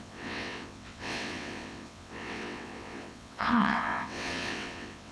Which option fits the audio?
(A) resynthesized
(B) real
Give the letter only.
A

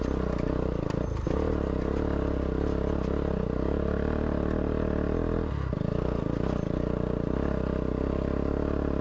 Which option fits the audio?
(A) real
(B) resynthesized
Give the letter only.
A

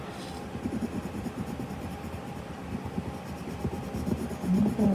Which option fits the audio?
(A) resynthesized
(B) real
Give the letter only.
B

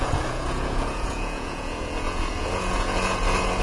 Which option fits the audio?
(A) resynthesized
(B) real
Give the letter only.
A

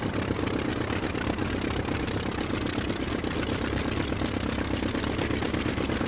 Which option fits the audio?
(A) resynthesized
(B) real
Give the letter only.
B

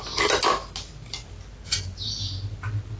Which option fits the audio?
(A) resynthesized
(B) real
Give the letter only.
B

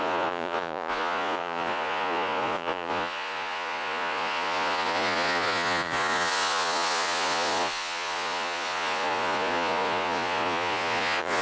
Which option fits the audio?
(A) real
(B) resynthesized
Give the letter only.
B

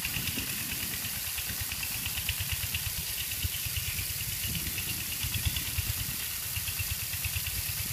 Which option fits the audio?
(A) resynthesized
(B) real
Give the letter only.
B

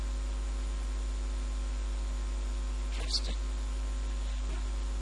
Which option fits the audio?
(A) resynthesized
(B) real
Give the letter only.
B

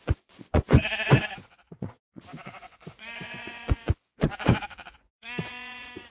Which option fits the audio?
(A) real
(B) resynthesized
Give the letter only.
B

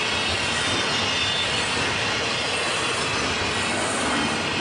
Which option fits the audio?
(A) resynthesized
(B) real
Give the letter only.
B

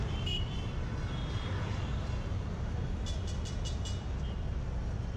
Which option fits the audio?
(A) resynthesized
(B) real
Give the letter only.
A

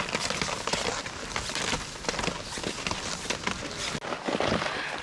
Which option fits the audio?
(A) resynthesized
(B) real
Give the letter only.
B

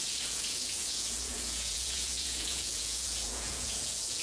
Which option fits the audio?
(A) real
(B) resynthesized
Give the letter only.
B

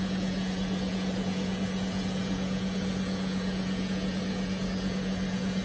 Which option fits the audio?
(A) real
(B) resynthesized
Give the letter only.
B